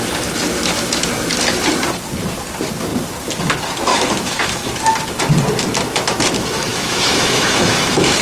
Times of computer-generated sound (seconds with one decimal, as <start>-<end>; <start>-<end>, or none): 3.9-4.7; 6.7-8.2